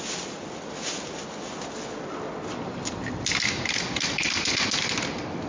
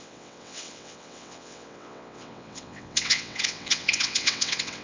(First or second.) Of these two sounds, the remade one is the second